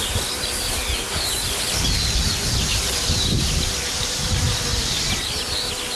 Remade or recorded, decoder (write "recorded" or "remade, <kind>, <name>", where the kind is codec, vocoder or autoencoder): recorded